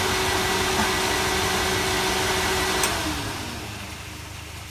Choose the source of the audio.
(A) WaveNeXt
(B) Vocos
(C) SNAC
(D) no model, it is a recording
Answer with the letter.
D